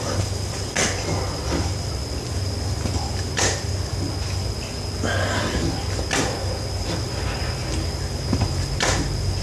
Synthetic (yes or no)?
no